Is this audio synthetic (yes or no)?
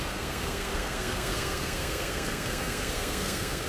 yes